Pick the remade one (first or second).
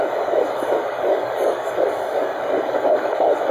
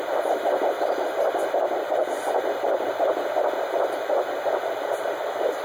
first